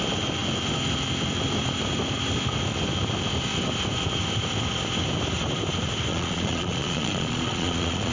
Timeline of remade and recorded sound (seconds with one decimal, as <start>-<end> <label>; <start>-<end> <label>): 0.0-6.1 recorded; 6.1-8.1 remade